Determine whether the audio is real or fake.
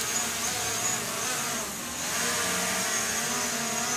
real